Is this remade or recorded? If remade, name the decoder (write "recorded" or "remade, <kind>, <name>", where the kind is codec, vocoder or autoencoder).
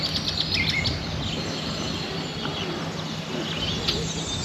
recorded